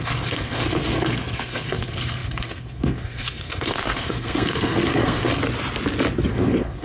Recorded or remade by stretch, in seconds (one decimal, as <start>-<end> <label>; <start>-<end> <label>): 0.0-5.4 remade; 5.4-6.3 recorded; 6.3-6.8 remade